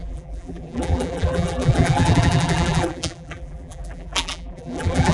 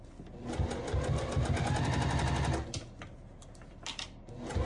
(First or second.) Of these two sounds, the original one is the second